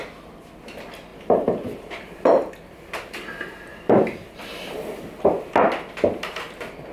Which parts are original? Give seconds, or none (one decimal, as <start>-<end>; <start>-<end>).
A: 0.0-1.1; 5.2-6.9